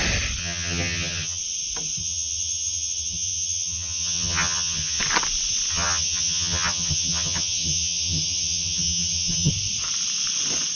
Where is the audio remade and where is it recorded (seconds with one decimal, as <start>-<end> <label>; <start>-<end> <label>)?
0.0-0.4 recorded; 0.4-1.4 remade; 1.4-2.0 recorded; 2.0-5.0 remade; 5.0-5.7 recorded; 5.7-9.5 remade; 9.5-10.7 recorded